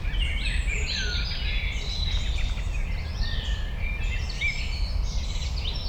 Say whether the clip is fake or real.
real